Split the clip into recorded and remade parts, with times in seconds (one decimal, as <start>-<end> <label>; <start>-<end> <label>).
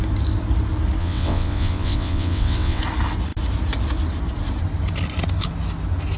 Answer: 0.0-1.0 recorded; 1.0-2.8 remade; 2.8-6.2 recorded